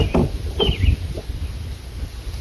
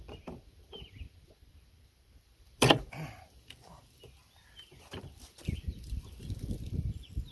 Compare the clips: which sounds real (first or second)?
first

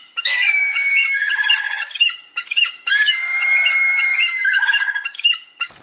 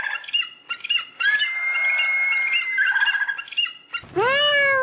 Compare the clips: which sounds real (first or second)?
second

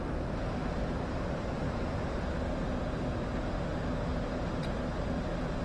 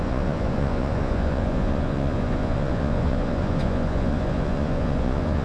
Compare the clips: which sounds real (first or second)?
first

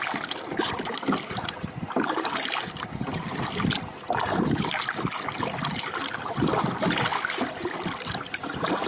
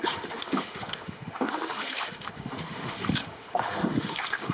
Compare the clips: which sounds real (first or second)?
first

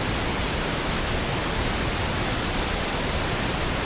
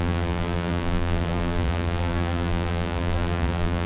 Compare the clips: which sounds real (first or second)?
first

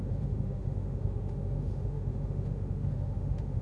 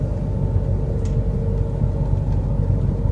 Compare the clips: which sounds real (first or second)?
second